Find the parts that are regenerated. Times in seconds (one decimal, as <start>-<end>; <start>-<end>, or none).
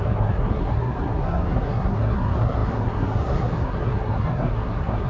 0.0-5.1